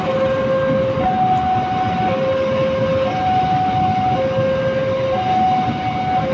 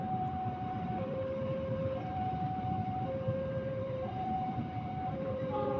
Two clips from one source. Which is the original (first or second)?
first